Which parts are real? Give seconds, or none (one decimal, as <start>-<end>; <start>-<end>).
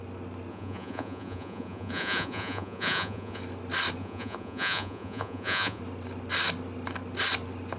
0.0-0.5; 3.4-4.0; 5.8-7.8